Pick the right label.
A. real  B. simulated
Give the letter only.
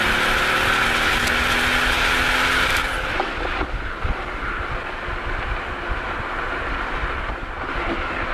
A